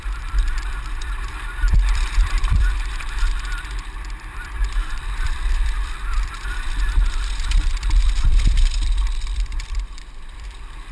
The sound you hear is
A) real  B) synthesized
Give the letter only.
B